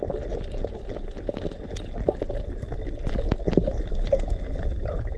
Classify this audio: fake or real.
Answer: real